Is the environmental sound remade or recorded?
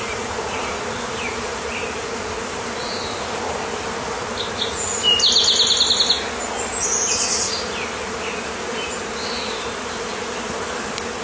recorded